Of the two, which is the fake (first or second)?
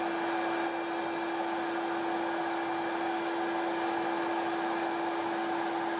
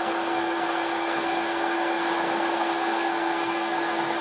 second